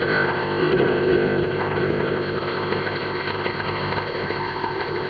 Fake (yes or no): yes